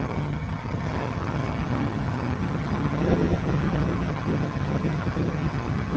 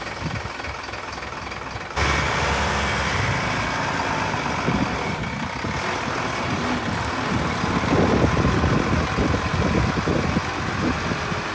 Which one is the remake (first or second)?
first